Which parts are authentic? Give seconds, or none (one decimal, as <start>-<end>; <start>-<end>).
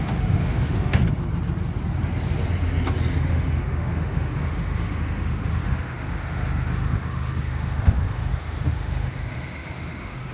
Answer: 1.0-3.3